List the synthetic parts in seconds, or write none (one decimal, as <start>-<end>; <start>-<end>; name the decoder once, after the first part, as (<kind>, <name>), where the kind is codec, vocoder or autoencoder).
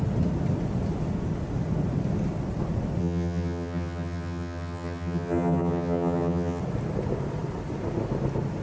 3.0-6.6 (vocoder, HiFi-GAN)